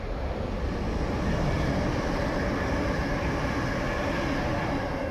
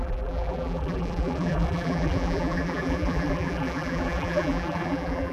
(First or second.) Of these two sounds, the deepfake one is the second